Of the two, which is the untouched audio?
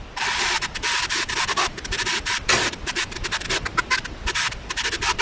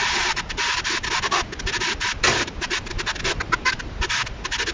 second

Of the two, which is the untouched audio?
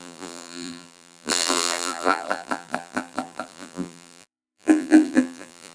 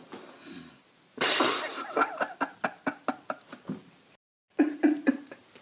second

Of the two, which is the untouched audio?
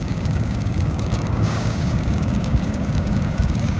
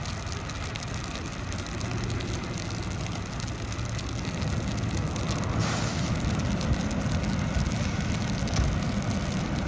second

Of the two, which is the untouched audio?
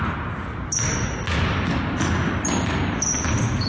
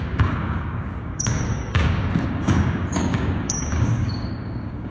first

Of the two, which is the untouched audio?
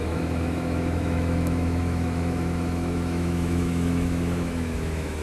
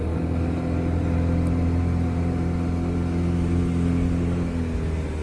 second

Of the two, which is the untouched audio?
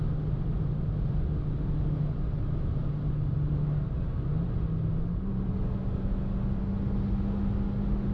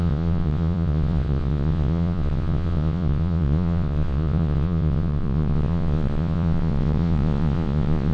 first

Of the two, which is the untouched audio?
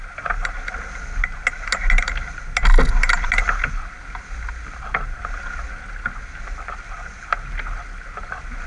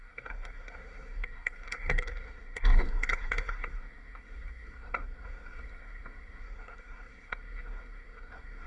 first